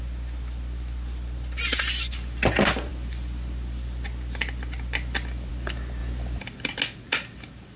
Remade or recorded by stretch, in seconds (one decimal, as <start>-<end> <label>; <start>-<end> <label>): 0.0-7.8 recorded